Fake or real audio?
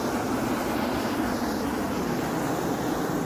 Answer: fake